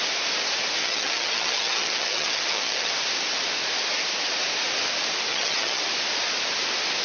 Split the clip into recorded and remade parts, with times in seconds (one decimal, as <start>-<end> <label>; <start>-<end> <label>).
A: 0.0-0.8 recorded; 0.8-2.9 remade; 2.9-5.3 recorded; 5.3-5.8 remade; 5.8-7.0 recorded